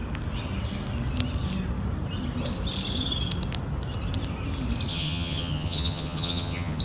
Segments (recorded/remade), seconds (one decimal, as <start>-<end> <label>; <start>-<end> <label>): 0.0-4.9 recorded; 4.9-6.8 remade

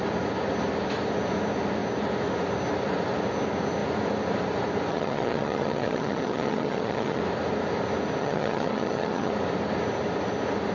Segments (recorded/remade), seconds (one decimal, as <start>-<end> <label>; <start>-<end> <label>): 0.0-4.9 recorded; 4.9-7.2 remade; 7.2-8.2 recorded; 8.2-9.3 remade; 9.3-10.7 recorded

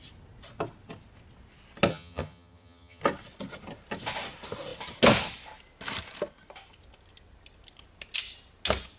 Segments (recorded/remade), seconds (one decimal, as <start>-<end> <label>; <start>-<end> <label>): 0.0-1.9 recorded; 1.9-3.0 remade; 3.0-9.0 recorded

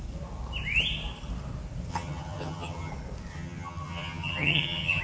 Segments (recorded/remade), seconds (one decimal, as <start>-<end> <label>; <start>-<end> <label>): 0.0-1.9 recorded; 1.9-2.9 remade; 2.9-3.3 recorded; 3.3-5.0 remade

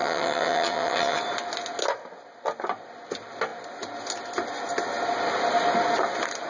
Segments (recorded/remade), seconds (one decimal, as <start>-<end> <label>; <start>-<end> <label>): 0.0-1.2 remade; 1.2-6.5 recorded

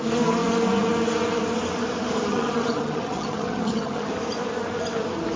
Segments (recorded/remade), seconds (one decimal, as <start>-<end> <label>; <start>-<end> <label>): 0.0-2.3 recorded; 2.3-4.1 remade; 4.1-5.4 recorded

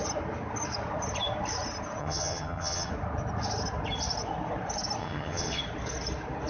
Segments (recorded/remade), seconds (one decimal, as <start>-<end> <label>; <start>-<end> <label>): 0.0-2.0 recorded; 2.0-2.9 remade; 2.9-5.0 recorded; 5.0-5.6 remade; 5.6-6.5 recorded

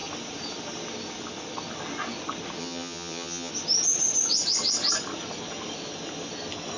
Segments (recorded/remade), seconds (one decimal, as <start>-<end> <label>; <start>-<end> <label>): 0.0-2.6 recorded; 2.6-3.5 remade; 3.5-6.8 recorded